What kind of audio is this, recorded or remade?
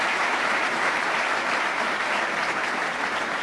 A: remade